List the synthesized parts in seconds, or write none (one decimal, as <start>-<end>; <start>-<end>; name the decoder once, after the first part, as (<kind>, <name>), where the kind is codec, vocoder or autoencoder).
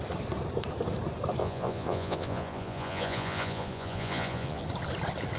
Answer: 1.4-4.6 (vocoder, Vocos)